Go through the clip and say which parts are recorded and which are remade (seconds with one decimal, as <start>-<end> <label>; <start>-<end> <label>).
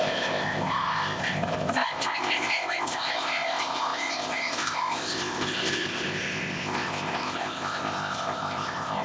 0.0-9.0 remade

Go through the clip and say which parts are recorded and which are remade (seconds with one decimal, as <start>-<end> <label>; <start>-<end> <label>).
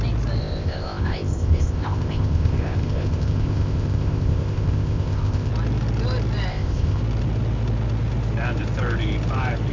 0.0-0.4 recorded; 0.4-5.5 remade; 5.5-6.5 recorded; 6.5-7.0 remade; 7.0-9.7 recorded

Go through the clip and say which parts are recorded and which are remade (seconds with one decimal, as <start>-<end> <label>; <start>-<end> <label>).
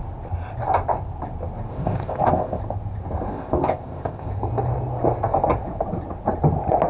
0.0-1.7 recorded; 1.7-2.6 remade; 2.6-3.3 recorded; 3.3-4.3 remade; 4.3-6.9 recorded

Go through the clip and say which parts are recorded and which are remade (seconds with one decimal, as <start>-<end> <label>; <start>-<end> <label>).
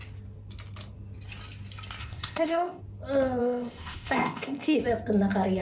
0.0-2.0 recorded; 2.0-2.8 remade; 2.8-3.4 recorded; 3.4-4.8 remade; 4.8-5.6 recorded